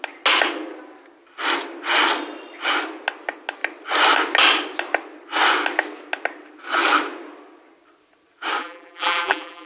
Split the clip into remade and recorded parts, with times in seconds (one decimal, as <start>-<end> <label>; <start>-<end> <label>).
0.0-8.6 recorded; 8.6-9.7 remade